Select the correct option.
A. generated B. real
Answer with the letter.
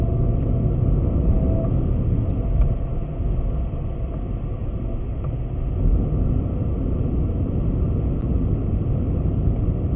B